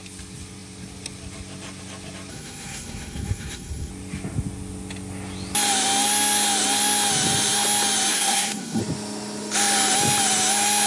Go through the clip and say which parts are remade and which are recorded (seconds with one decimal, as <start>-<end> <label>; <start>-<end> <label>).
0.0-2.3 recorded; 2.3-3.9 remade; 3.9-8.1 recorded; 8.1-8.8 remade; 8.8-10.9 recorded